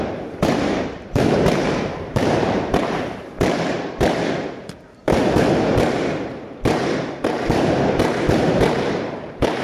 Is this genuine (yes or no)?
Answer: no